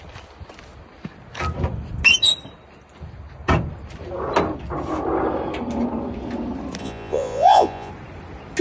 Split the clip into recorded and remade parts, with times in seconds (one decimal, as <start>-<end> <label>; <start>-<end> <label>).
0.0-6.8 recorded; 6.8-7.9 remade; 7.9-8.6 recorded